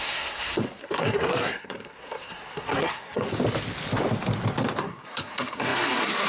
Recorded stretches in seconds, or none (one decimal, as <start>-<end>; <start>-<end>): 3.3-4.8